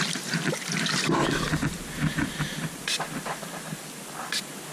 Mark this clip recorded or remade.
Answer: recorded